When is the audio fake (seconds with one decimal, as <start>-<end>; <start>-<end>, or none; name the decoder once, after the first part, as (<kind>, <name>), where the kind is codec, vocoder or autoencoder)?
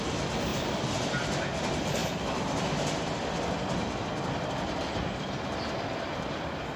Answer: none